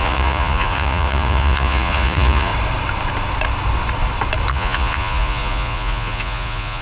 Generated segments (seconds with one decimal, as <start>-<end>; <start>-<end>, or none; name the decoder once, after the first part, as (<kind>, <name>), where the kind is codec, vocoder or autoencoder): 0.0-2.5 (vocoder, Vocos); 4.5-6.8